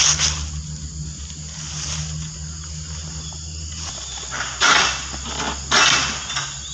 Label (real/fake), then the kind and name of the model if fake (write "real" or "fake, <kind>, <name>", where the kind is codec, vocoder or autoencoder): real